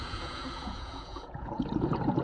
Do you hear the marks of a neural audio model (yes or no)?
yes